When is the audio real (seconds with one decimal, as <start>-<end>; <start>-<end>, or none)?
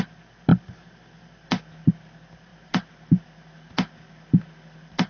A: 0.0-5.1